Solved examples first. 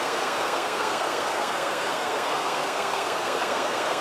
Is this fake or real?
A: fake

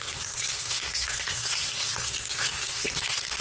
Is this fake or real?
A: fake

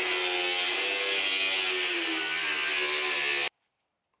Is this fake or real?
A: real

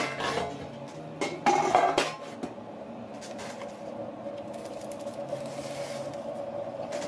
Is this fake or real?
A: real